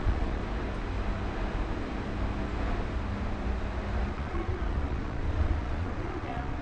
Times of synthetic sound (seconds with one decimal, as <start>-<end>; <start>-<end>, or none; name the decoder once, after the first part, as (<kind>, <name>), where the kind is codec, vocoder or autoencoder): 0.0-0.4 (vocoder, Vocos); 4.1-6.6